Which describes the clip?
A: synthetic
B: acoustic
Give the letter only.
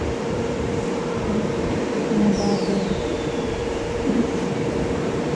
A